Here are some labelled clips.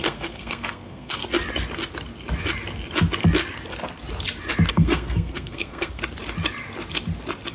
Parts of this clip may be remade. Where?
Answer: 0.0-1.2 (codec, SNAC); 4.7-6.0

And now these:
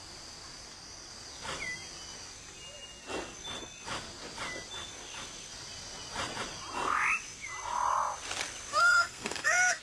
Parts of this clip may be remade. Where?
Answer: 8.7-9.8 (codec, SNAC)

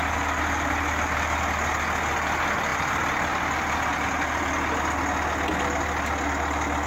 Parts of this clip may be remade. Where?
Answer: none